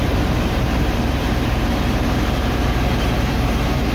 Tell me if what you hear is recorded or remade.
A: remade